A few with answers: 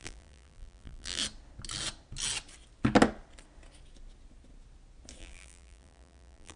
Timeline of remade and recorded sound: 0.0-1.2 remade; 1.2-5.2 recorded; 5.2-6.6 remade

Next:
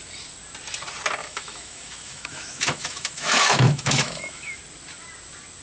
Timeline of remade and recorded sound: 0.0-1.2 recorded; 1.2-4.6 remade; 4.6-5.6 recorded

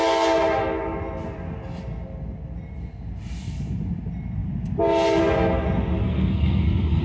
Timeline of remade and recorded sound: 0.0-6.0 recorded; 6.0-7.0 remade

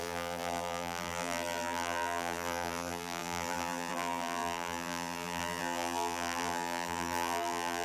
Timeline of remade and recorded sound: 0.0-7.8 remade

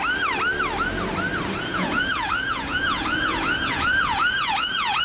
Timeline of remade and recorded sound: 0.0-1.7 recorded; 1.7-5.0 remade

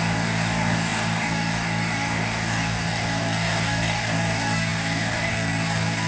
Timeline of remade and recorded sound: 0.0-6.1 remade

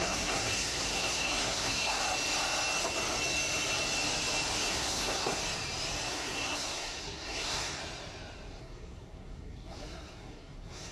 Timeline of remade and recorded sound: 0.0-2.0 remade; 2.0-4.7 recorded; 4.7-5.4 remade; 5.4-6.1 recorded; 6.1-7.8 remade; 7.8-8.6 recorded; 8.6-10.9 remade

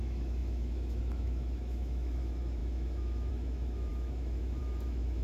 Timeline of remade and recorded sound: 0.0-5.2 remade